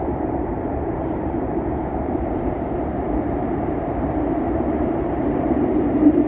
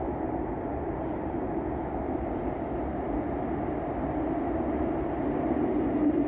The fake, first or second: first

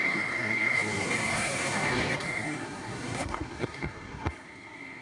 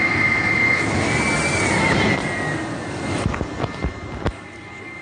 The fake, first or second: first